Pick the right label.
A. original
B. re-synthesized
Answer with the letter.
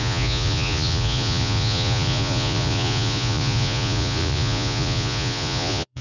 B